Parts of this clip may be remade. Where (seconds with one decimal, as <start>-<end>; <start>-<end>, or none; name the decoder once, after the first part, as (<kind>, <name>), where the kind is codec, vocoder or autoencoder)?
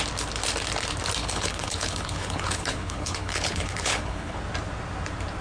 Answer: 1.2-4.4 (codec, HILCodec)